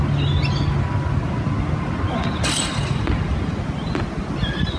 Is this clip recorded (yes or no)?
yes